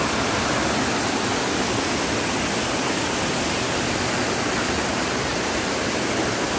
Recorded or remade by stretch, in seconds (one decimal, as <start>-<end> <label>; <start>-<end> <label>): 0.0-5.3 recorded; 5.3-6.6 remade